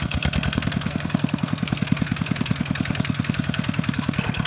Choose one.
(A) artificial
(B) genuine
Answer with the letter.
A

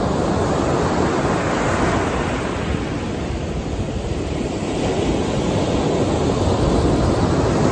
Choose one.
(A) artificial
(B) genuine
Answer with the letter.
B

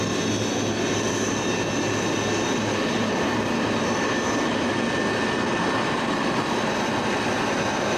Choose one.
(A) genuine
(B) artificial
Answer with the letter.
A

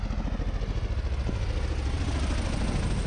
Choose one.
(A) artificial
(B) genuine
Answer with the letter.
B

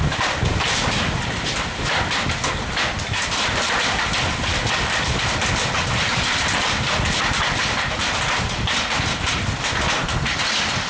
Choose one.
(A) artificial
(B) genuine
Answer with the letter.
B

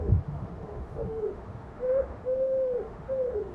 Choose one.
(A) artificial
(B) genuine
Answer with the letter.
A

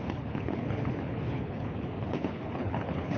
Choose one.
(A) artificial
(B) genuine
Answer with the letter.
A